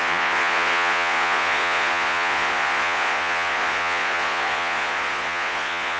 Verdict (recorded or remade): remade